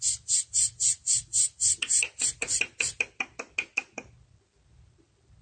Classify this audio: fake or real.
real